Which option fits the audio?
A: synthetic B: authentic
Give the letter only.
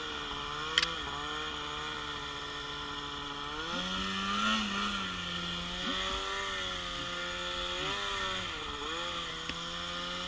B